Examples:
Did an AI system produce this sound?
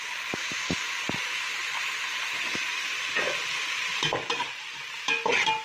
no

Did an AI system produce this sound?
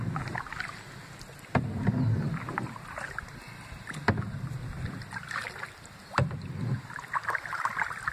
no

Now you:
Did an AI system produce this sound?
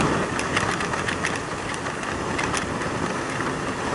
no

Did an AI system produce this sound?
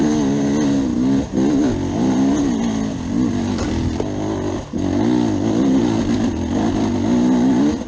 no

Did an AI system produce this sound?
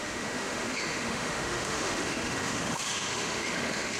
yes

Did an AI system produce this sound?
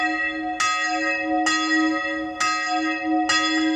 no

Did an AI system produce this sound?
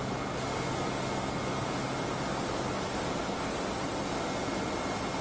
no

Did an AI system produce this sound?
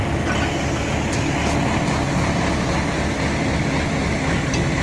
no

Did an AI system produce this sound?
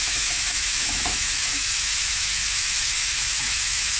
yes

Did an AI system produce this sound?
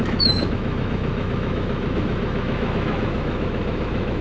yes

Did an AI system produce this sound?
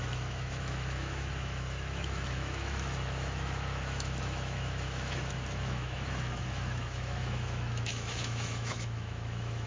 yes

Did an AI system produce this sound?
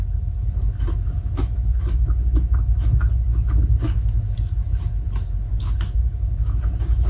yes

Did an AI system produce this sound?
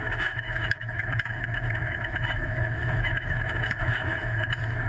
yes